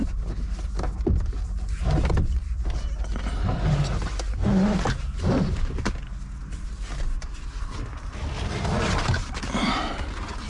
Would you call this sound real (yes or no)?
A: yes